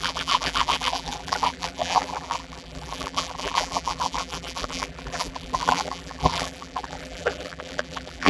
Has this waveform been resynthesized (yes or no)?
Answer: yes